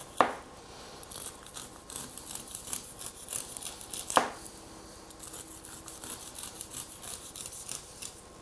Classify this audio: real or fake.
real